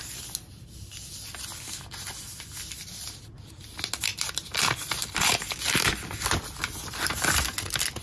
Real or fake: real